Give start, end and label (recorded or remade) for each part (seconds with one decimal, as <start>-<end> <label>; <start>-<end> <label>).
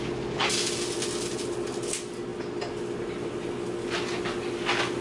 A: 0.0-5.0 recorded